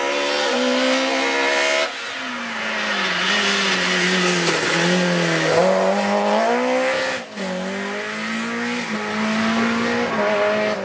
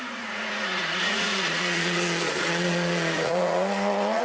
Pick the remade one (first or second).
second